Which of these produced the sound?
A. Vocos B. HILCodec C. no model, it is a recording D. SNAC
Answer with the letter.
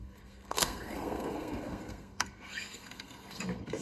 D